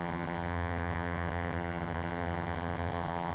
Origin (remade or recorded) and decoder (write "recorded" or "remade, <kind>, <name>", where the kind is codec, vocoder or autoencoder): remade, vocoder, HiFi-GAN